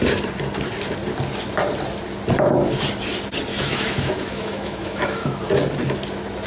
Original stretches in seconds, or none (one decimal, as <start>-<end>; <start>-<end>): 0.0-3.5; 5.4-6.5